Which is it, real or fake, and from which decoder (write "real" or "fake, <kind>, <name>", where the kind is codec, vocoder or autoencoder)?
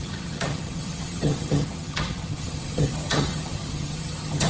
fake, vocoder, HiFi-GAN